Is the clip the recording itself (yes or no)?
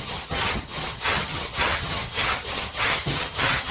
no